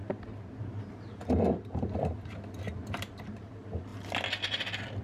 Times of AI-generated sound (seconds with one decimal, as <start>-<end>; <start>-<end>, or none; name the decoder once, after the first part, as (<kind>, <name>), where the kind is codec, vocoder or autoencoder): 0.0-1.0 (vocoder, BigVGAN v2)